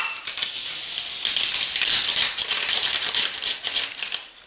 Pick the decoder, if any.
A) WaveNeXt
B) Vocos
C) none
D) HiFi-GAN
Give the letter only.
C